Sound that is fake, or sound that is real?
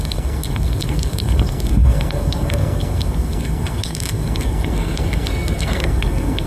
fake